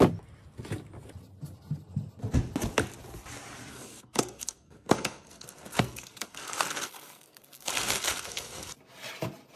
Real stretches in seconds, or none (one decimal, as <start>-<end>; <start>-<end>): 0.0-3.7; 8.7-9.6